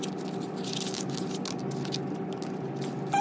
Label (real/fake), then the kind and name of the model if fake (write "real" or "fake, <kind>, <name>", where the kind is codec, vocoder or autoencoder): real